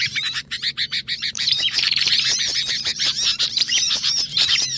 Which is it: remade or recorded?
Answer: remade